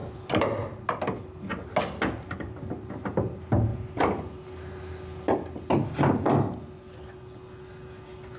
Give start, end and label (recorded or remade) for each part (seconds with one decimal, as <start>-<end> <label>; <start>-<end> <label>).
0.0-8.4 recorded